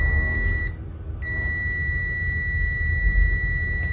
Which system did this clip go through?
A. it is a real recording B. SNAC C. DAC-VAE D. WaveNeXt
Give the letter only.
A